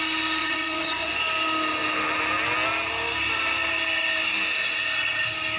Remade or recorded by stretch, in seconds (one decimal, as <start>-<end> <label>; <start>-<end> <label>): 0.0-0.4 recorded; 0.4-1.2 remade; 1.2-5.6 recorded